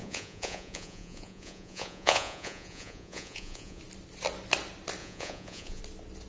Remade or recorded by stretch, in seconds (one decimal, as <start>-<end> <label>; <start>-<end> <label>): 0.0-3.8 remade; 3.8-5.0 recorded; 5.0-5.8 remade; 5.8-6.3 recorded